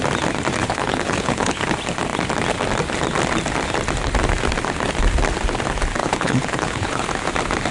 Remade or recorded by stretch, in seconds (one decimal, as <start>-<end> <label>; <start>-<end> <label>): 0.0-0.6 recorded; 0.6-1.6 remade; 1.6-6.0 recorded; 6.0-7.1 remade; 7.1-7.7 recorded